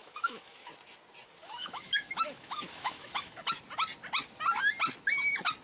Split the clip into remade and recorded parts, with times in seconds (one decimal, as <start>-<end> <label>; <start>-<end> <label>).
0.0-0.7 remade; 0.7-1.4 recorded; 1.4-3.5 remade; 3.5-5.6 recorded